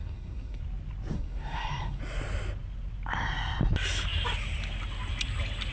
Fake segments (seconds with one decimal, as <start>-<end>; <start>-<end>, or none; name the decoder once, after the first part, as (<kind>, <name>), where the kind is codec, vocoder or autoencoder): 0.0-0.6 (codec, SNAC); 1.1-2.0